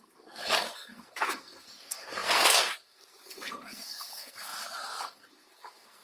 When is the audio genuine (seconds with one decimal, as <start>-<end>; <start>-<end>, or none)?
none